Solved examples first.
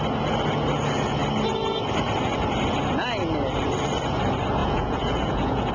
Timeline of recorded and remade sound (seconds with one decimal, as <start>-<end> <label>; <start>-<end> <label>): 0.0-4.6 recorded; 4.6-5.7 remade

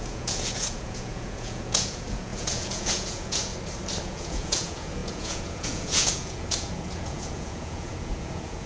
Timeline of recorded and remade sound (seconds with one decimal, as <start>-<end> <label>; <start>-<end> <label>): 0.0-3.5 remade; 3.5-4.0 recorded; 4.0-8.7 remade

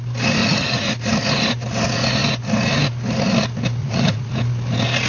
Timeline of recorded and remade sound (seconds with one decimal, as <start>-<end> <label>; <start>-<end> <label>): 0.0-0.4 recorded; 0.4-0.9 remade; 0.9-3.8 recorded; 3.8-4.3 remade; 4.3-5.1 recorded